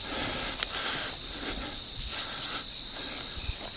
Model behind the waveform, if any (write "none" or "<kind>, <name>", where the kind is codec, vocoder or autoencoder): none